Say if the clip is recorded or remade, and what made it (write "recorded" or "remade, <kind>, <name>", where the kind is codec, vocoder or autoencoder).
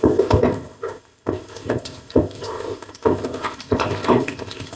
remade, codec, ZipCodec